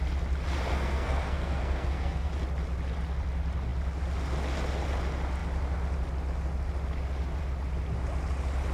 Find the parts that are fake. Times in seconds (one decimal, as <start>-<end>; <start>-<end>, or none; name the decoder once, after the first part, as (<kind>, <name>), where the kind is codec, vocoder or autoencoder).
0.7-2.3 (codec, SNAC)